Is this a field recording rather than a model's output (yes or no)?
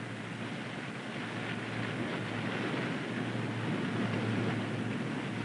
yes